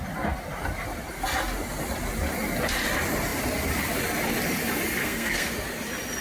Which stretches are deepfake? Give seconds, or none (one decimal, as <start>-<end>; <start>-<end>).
5.0-5.5